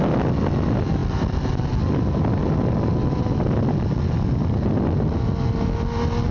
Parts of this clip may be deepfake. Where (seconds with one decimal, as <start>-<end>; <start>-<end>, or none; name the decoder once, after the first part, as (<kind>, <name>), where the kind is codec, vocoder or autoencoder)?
none